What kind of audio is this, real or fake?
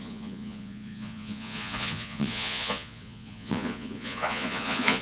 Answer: fake